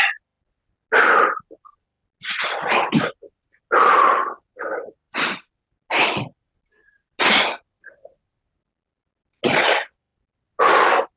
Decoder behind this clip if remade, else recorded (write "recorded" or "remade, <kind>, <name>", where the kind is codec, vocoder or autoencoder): recorded